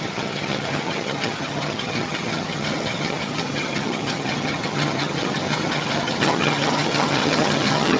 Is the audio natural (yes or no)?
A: no